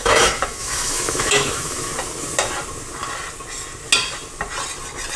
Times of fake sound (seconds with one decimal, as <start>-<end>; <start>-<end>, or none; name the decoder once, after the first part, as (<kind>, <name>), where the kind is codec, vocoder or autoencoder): 0.0-1.9 (autoencoder, DAC-VAE)